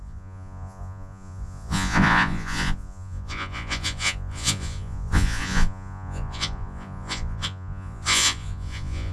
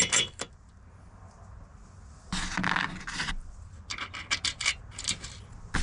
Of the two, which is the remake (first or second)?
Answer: first